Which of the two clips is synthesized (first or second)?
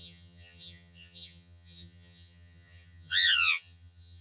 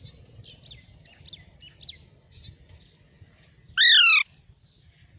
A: first